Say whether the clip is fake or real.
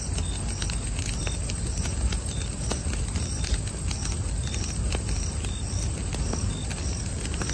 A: real